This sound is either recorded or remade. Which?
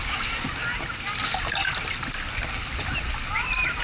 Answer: recorded